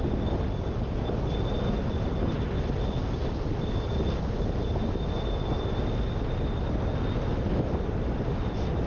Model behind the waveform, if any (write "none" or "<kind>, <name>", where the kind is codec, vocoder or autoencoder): none